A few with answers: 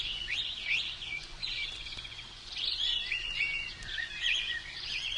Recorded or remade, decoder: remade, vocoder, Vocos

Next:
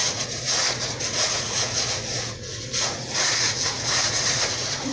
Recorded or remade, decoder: remade, vocoder, Vocos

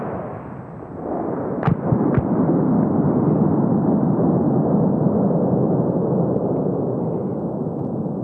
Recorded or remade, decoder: recorded